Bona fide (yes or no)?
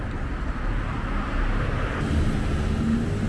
yes